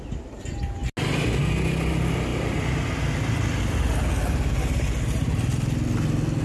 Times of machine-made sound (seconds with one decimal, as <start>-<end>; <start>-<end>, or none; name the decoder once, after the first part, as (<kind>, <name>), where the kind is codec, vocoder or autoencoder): none